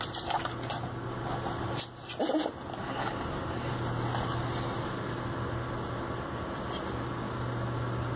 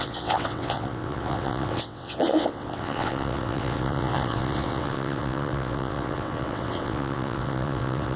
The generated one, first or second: second